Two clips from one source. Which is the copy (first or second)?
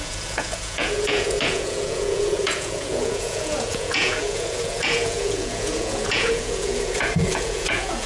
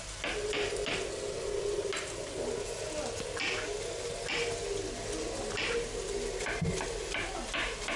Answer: first